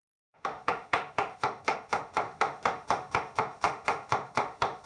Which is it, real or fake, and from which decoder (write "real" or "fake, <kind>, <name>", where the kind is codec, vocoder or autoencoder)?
fake, autoencoder, DAC-VAE